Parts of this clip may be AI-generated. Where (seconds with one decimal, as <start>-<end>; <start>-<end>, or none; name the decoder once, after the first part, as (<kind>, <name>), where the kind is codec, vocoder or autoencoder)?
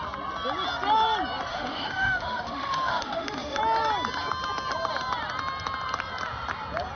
1.5-3.6 (autoencoder, DAC-VAE)